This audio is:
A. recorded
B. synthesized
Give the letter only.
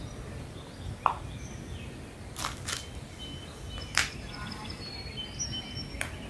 A